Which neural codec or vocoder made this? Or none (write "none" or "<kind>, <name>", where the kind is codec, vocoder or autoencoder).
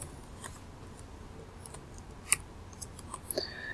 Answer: none